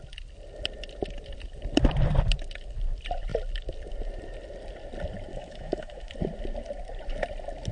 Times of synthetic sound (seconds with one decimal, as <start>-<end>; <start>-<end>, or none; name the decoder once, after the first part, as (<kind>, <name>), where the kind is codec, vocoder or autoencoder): 5.3-6.1 (autoencoder, DAC-VAE)